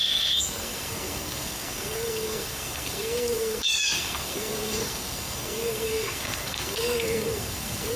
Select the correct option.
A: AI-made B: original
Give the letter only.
A